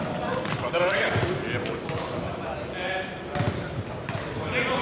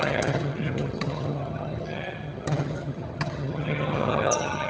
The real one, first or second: first